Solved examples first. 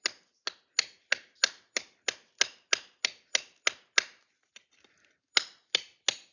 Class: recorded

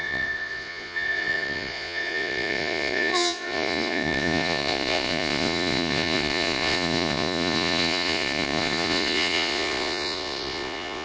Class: remade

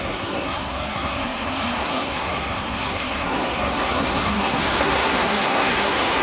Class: remade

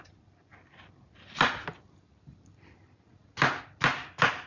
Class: recorded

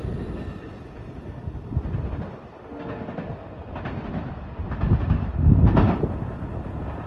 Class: recorded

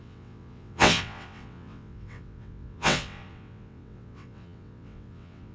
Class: remade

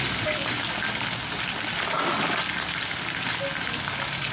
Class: recorded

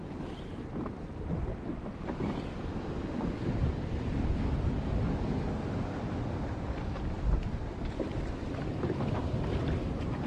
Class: recorded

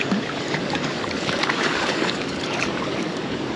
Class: remade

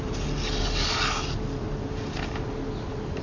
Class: recorded